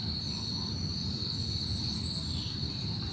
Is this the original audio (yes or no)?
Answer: no